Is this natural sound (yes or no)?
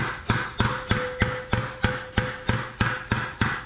yes